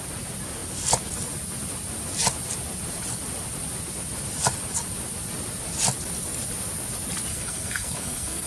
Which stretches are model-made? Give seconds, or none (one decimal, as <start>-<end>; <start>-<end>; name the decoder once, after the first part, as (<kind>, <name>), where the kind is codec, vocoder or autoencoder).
7.3-8.5 (codec, SNAC)